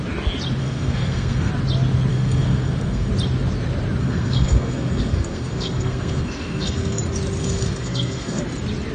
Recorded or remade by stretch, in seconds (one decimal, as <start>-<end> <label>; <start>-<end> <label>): 0.0-0.6 recorded; 0.6-1.5 remade; 1.5-2.1 recorded; 2.1-3.1 remade; 3.1-4.0 recorded; 4.0-7.0 remade; 7.0-7.4 recorded; 7.4-8.4 remade; 8.4-8.9 recorded

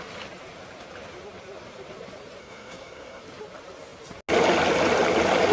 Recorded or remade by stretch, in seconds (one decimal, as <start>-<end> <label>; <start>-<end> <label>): 0.0-2.4 recorded; 2.4-3.2 remade; 3.2-5.5 recorded

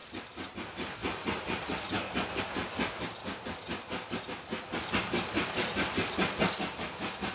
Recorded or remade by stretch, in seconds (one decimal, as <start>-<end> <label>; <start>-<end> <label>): 0.0-7.3 recorded

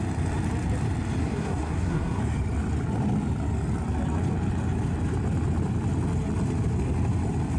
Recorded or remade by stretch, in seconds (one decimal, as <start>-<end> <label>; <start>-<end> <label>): 0.0-1.2 recorded; 1.2-2.2 remade; 2.2-7.6 recorded

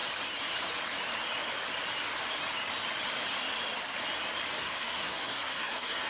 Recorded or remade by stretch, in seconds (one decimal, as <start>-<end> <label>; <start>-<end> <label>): 0.0-4.6 recorded; 4.6-6.1 remade